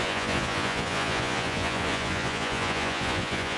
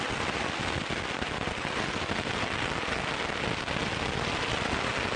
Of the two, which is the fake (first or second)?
first